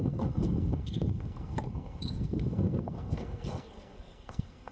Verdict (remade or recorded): remade